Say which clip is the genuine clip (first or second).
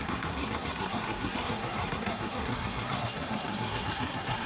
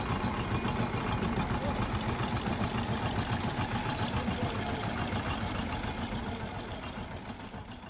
second